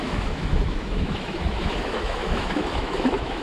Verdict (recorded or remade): remade